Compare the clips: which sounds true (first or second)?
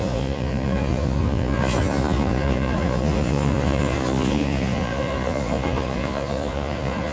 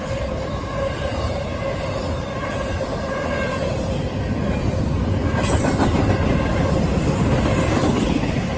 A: second